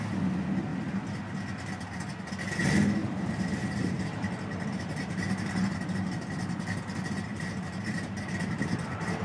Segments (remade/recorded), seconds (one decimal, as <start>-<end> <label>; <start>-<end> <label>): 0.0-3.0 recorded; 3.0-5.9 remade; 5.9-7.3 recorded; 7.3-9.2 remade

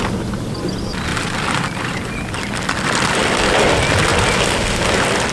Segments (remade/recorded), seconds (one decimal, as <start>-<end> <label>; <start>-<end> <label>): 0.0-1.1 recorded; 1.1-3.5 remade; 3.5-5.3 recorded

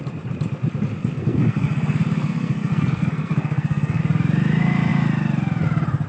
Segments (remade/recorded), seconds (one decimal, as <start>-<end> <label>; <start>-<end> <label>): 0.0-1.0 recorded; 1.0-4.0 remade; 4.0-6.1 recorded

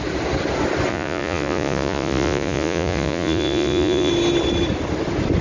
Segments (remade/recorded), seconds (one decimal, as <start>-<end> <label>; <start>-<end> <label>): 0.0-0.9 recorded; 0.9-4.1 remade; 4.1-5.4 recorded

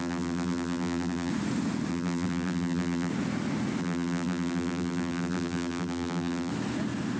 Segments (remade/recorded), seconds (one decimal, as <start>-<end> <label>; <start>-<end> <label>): 0.0-1.3 remade; 1.3-1.9 recorded; 1.9-3.1 remade; 3.1-3.8 recorded; 3.8-6.5 remade; 6.5-7.2 recorded

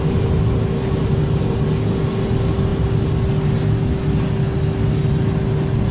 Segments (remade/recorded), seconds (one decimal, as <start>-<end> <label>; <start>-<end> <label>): 0.0-5.9 recorded